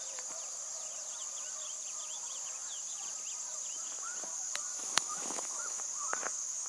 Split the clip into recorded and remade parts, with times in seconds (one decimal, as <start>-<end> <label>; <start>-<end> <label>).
0.0-4.7 recorded; 4.7-5.8 remade; 5.8-6.7 recorded